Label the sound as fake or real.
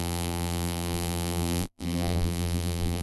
fake